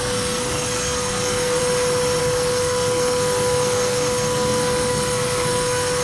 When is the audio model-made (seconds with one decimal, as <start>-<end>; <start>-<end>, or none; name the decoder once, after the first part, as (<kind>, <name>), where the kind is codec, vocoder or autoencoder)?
0.0-1.6 (codec, SNAC); 2.2-6.0